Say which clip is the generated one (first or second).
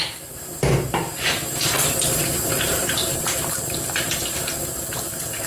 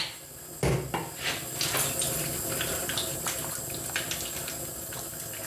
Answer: first